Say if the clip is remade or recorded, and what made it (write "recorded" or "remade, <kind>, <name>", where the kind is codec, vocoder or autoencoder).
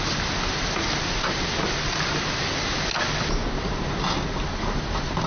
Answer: recorded